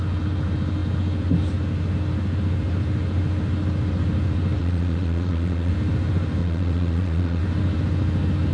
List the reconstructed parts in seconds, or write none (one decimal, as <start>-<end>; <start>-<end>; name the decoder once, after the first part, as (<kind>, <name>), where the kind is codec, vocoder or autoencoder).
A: 4.6-5.7 (vocoder, Vocos); 6.4-7.4